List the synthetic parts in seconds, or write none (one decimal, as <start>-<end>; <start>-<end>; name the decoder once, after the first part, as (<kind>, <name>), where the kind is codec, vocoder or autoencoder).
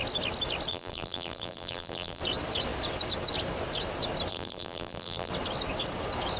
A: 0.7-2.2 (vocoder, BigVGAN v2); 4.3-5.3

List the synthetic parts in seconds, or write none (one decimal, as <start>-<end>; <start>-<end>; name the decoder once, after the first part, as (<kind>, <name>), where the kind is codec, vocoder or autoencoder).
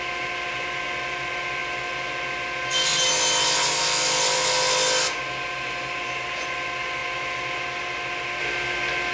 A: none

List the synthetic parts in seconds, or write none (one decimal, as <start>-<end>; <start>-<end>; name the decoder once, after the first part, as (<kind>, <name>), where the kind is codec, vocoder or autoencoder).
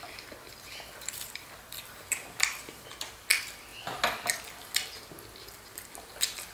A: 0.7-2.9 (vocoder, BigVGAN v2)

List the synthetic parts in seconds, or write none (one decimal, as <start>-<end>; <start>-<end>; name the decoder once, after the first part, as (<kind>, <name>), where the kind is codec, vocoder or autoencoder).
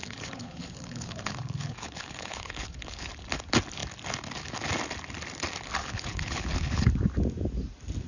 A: 0.0-3.1 (codec, HILCodec); 5.8-6.9